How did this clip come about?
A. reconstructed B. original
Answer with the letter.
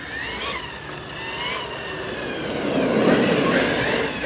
B